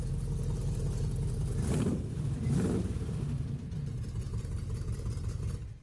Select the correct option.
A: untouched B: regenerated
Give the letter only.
A